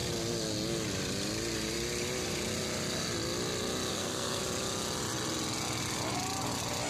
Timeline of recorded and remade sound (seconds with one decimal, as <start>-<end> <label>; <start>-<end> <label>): 0.0-3.9 recorded; 3.9-4.4 remade; 4.4-6.9 recorded